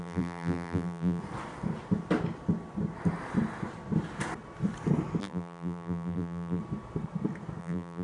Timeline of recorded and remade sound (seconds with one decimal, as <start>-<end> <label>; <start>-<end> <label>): 0.0-1.2 remade; 1.2-5.2 recorded; 5.2-6.6 remade; 6.6-7.6 recorded; 7.6-8.0 remade